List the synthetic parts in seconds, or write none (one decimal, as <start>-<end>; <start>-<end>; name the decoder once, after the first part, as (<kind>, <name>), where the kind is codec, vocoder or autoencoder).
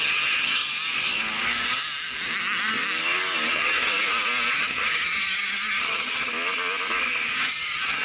0.0-0.6 (vocoder, HiFi-GAN); 3.5-3.9; 4.5-6.3; 7.3-8.0